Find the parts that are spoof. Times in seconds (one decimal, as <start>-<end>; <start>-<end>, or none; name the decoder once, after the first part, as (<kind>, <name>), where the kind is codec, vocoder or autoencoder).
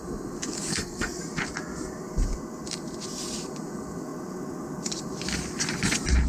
0.7-1.2 (codec, SNAC)